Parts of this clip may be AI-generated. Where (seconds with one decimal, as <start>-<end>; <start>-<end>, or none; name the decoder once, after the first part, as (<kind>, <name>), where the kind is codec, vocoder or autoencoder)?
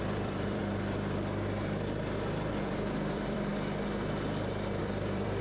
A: 0.0-0.6 (vocoder, BigVGAN v2); 2.5-3.5; 4.8-5.4